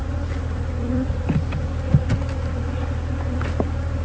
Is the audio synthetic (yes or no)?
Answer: no